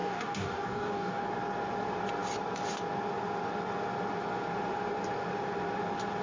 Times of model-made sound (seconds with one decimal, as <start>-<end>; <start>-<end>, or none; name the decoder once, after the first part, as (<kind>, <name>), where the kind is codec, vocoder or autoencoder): 0.0-1.2 (codec, DAC)